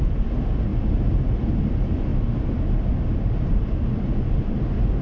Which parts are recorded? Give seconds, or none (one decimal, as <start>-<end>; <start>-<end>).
0.0-5.0